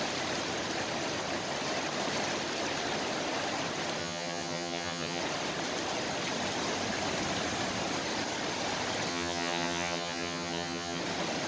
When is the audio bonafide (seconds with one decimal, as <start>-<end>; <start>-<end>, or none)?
0.0-4.0; 5.2-9.1; 11.0-11.5